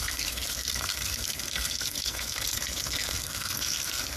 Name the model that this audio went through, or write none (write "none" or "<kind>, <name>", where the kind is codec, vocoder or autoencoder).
codec, SNAC